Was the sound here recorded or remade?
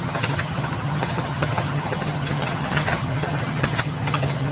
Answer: remade